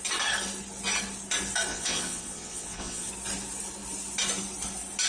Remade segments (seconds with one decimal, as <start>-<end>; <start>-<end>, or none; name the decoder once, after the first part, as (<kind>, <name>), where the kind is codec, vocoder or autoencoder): 1.7-3.1 (vocoder, Vocos)